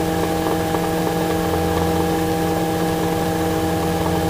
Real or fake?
real